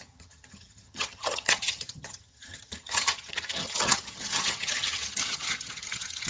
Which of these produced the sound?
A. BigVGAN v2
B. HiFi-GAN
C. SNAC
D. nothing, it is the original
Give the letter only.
B